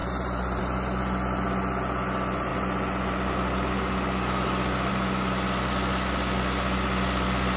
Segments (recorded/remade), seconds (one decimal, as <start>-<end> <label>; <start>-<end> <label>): 0.0-0.6 remade; 0.6-7.6 recorded